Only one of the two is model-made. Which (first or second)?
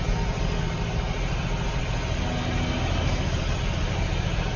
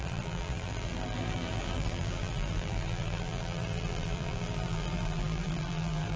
second